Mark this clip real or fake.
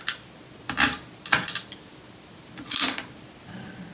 real